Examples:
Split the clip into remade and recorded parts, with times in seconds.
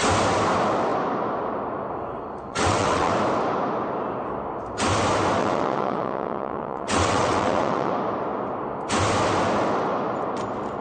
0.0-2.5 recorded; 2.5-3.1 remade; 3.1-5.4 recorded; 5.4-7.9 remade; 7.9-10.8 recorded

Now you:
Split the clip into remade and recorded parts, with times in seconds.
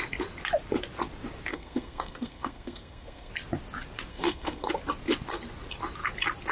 0.0-1.5 recorded; 1.5-3.3 remade; 3.3-4.1 recorded; 4.1-4.7 remade; 4.7-6.5 recorded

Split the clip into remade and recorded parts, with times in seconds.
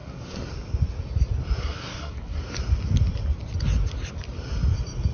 0.0-0.5 remade; 0.5-1.6 recorded; 1.6-2.4 remade; 2.4-5.1 recorded